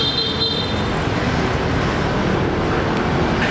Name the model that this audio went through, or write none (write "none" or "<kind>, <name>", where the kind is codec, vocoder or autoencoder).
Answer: none